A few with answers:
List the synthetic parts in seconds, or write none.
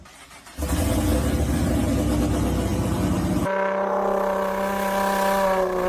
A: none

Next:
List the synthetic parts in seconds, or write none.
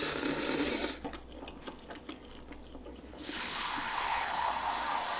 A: 3.1-4.5 (codec, HILCodec)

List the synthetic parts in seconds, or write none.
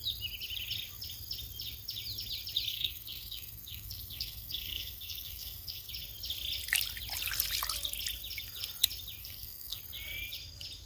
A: 2.7-5.9 (codec, SNAC); 9.2-9.8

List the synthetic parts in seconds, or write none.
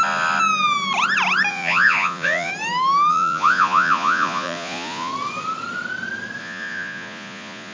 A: 1.5-2.5 (vocoder, Vocos); 3.1-5.1; 6.4-7.7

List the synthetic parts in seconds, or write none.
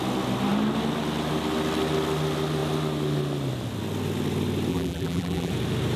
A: 4.7-5.5 (vocoder, BigVGAN v2)